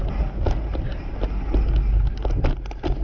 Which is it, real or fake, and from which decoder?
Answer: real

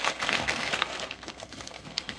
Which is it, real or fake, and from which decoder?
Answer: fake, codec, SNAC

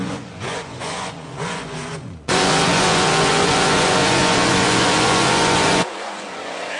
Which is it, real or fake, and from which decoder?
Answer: fake, vocoder, Vocos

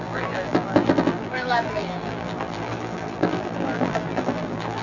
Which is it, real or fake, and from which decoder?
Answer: fake, vocoder, BigVGAN v2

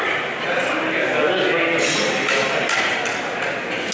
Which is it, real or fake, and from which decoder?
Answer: real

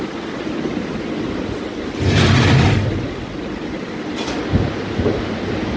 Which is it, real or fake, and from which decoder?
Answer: real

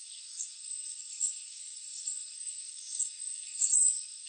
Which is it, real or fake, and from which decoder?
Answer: fake, codec, SNAC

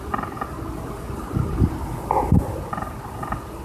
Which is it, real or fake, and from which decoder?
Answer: real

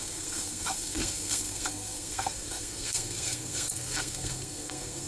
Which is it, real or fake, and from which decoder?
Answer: fake, codec, SNAC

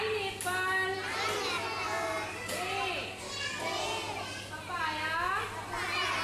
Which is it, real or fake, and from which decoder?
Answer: real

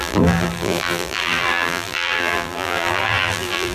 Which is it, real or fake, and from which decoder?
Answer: fake, vocoder, BigVGAN v2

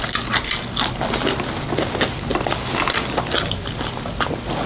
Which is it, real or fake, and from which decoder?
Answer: real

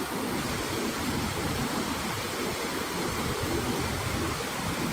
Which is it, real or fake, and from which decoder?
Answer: real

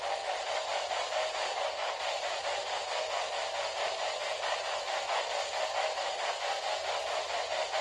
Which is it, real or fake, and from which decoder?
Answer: real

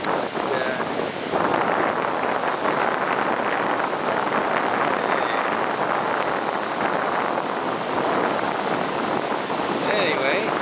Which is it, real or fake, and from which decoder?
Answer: real